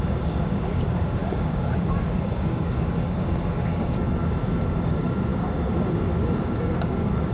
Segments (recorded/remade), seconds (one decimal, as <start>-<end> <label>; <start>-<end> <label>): 0.0-7.3 remade